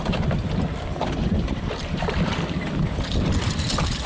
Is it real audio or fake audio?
fake